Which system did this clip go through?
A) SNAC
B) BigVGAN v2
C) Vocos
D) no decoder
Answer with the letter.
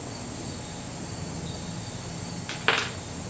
D